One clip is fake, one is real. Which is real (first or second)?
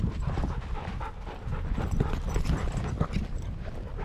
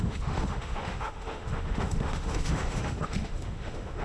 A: first